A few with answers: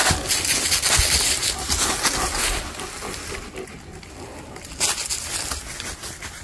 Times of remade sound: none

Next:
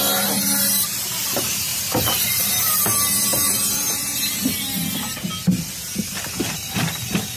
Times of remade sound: 1.7-2.5 (vocoder, BigVGAN v2)

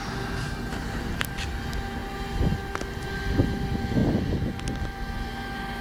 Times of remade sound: none

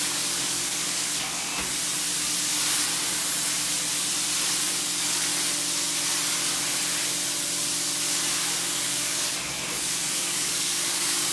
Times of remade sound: 0.0-1.5 (codec, DAC); 4.7-5.3; 8.6-11.3

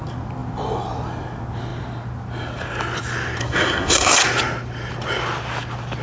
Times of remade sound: 3.4-4.1 (codec, SNAC)